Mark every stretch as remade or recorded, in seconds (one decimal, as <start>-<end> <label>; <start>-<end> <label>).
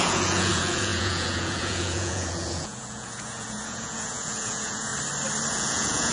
0.0-4.9 remade; 4.9-5.5 recorded; 5.5-6.1 remade